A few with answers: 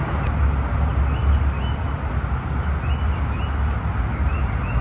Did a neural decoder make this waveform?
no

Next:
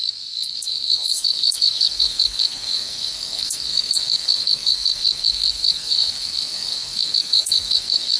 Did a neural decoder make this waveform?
yes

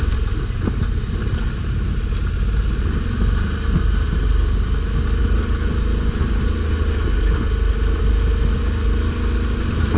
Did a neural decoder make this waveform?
no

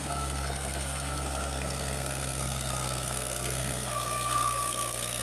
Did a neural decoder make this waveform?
yes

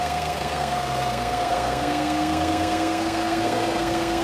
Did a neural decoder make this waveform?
yes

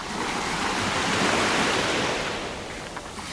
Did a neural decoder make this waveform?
no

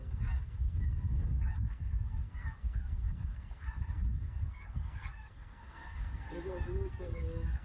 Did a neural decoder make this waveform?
yes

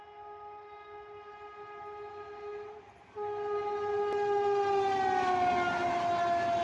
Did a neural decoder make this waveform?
no